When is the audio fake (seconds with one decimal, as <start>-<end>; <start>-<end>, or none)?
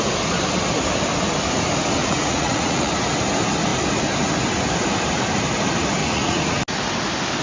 2.0-2.9; 6.0-6.6